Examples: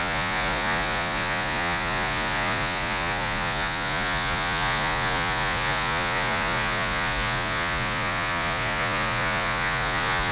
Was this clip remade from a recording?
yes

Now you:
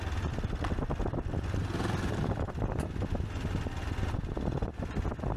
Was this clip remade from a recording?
no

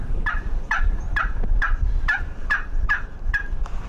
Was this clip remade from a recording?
yes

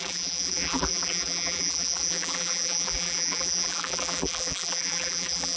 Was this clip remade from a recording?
yes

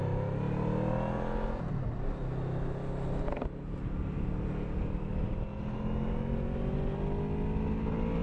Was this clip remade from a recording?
no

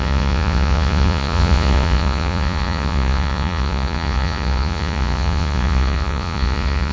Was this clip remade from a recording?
yes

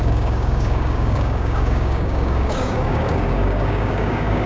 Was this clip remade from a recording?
yes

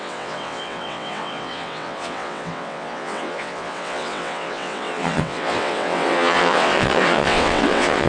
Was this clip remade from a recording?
yes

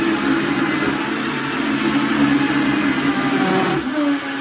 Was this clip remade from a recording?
no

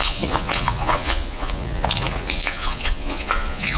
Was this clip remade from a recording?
yes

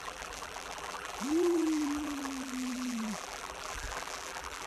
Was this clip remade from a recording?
yes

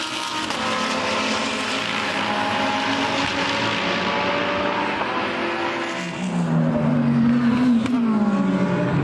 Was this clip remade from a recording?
no